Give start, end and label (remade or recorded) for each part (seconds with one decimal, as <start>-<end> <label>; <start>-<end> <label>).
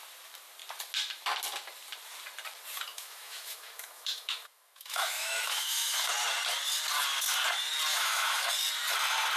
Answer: 0.0-2.9 recorded; 2.9-6.1 remade; 6.1-7.9 recorded; 7.9-8.5 remade; 8.5-9.4 recorded